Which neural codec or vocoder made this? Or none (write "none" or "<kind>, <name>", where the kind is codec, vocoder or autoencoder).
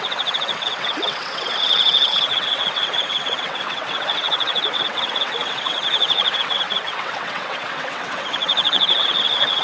vocoder, WaveNeXt